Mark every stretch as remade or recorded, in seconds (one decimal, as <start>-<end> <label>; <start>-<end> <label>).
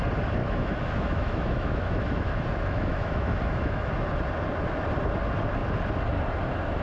0.0-0.4 recorded; 0.4-3.9 remade; 3.9-6.8 recorded